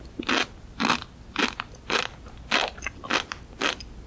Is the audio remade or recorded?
recorded